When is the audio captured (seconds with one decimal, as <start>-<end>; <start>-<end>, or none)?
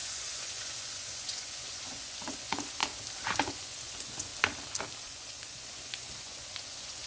2.8-3.5; 4.3-5.0